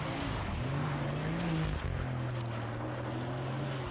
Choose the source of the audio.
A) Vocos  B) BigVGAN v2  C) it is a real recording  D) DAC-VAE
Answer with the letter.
C